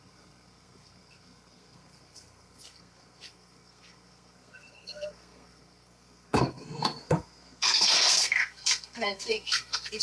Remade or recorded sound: remade